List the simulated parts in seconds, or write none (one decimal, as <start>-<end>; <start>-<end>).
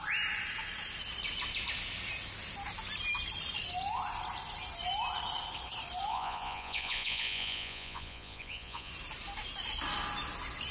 6.1-8.9